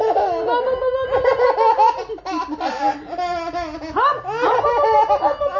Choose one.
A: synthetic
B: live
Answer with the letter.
B